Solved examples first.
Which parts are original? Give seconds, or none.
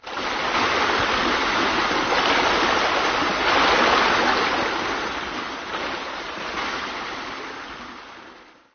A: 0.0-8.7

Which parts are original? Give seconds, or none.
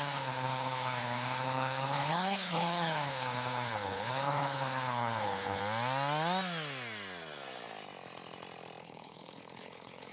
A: 5.6-8.8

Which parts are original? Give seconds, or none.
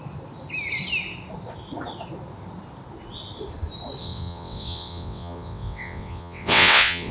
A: 0.0-4.0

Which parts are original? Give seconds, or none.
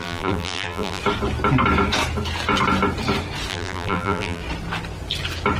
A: 1.0-3.5; 4.4-5.6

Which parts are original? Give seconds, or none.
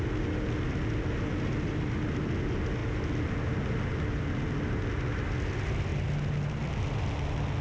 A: 0.0-7.6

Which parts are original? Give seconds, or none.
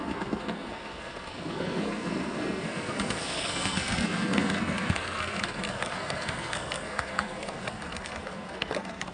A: none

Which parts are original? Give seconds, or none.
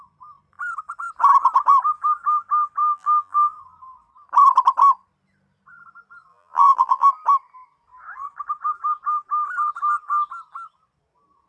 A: 0.0-2.8; 3.6-6.3; 7.1-11.5